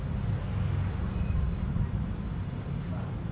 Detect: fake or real real